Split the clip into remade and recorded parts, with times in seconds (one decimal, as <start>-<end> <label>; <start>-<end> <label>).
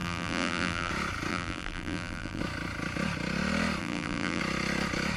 0.0-0.9 remade; 0.9-1.3 recorded; 1.3-2.4 remade; 2.4-3.8 recorded; 3.8-4.4 remade; 4.4-5.2 recorded